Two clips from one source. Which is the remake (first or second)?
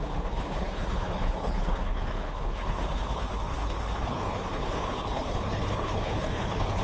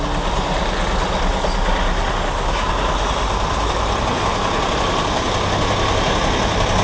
first